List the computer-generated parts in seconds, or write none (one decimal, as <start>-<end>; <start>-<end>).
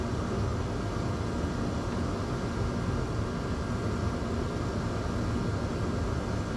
none